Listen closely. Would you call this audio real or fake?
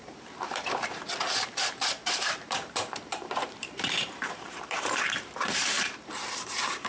fake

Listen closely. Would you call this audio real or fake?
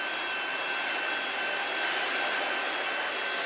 real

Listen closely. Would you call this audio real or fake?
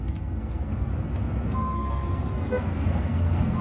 fake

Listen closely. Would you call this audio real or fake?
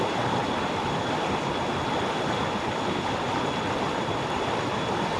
real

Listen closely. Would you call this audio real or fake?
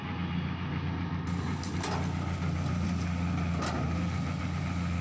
real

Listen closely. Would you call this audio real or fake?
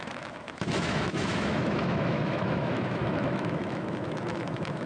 fake